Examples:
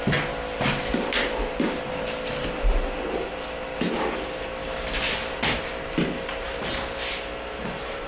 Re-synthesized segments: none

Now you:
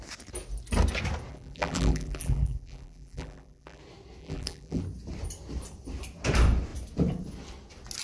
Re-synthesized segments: 1.3-3.8 (vocoder, BigVGAN v2); 4.2-4.8

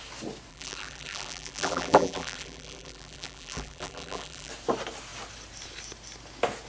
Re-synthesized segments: 0.5-4.5 (vocoder, BigVGAN v2)